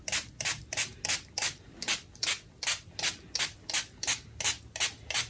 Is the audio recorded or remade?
recorded